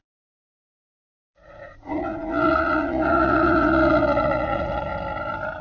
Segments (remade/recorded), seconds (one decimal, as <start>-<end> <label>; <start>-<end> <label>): 0.0-4.9 remade; 4.9-5.6 recorded